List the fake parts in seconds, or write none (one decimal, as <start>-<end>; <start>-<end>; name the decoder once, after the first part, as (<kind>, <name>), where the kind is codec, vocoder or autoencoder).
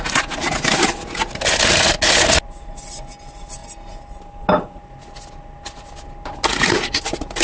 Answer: none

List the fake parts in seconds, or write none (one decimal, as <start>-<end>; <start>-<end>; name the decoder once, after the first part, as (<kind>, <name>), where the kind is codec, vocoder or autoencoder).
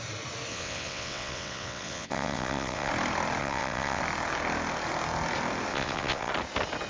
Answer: 0.5-2.9 (vocoder, WaveNeXt); 3.4-4.0; 5.7-6.3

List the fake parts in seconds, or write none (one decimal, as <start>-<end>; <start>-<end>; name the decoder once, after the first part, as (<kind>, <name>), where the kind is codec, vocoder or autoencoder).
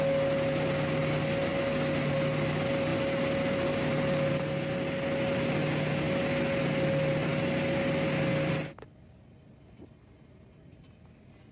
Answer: none